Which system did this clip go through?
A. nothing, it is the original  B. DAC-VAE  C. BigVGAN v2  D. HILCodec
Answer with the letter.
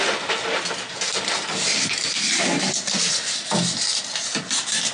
A